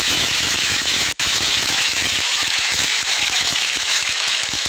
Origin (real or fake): fake